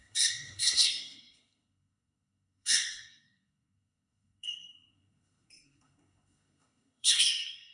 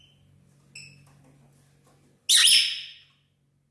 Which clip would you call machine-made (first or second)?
first